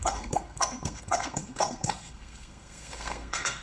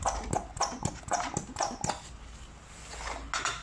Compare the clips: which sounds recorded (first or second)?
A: second